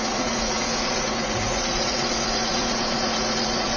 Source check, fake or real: fake